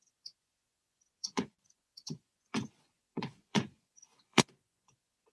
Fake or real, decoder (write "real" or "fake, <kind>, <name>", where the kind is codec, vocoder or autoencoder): fake, vocoder, Vocos